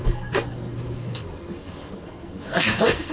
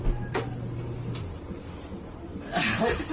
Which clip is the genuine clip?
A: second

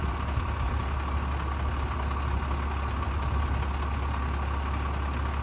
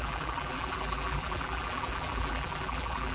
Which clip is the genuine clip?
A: first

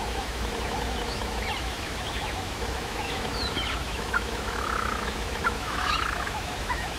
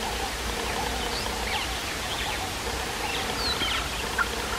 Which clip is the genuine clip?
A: second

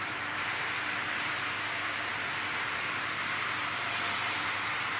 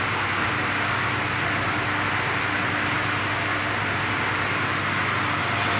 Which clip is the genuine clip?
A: second